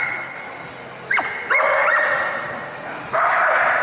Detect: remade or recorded recorded